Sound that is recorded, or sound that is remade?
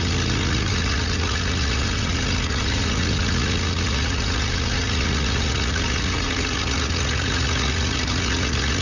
remade